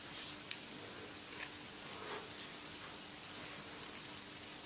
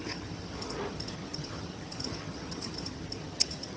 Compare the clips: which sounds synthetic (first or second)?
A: second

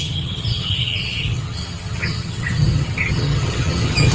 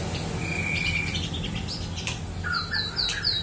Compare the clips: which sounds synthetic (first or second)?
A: first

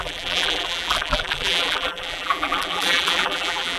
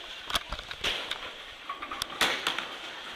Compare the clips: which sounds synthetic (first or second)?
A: first